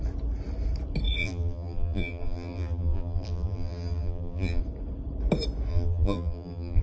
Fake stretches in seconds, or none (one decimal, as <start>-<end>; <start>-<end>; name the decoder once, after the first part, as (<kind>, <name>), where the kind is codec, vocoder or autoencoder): 1.2-4.6 (vocoder, BigVGAN v2); 5.7-6.8